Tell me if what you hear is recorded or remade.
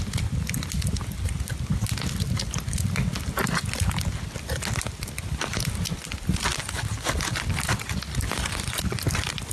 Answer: recorded